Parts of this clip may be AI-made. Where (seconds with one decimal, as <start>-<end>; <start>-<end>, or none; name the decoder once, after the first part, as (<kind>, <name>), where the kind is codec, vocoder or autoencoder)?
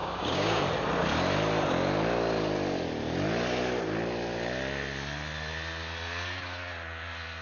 0.0-0.6 (codec, DAC)